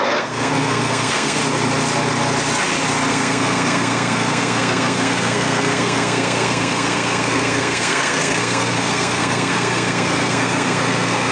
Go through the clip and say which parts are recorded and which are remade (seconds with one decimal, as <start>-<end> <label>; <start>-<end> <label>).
0.0-1.4 remade; 1.4-3.1 recorded; 3.1-11.3 remade

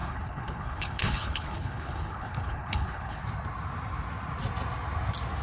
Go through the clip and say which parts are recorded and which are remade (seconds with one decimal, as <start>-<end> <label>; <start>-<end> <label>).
0.0-3.2 remade; 3.2-5.4 recorded